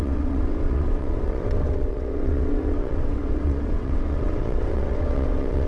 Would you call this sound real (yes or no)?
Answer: no